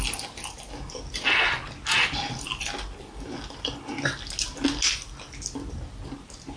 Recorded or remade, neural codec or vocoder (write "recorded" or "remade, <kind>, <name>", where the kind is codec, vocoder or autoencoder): recorded